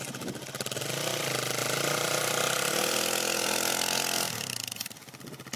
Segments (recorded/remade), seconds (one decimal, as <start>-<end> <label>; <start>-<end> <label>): 0.0-5.6 recorded